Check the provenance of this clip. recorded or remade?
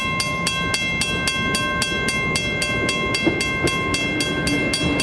recorded